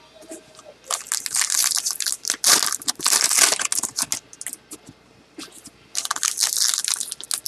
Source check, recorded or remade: recorded